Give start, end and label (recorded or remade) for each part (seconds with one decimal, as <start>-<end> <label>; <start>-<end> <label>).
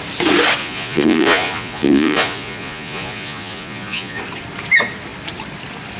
0.0-0.6 recorded; 0.6-4.2 remade; 4.2-6.0 recorded